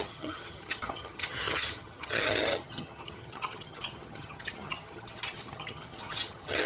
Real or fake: fake